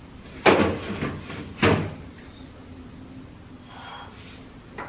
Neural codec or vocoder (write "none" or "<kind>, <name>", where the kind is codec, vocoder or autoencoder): none